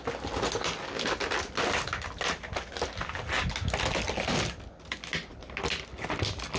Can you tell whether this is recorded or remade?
recorded